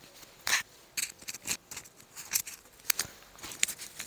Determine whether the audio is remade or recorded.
recorded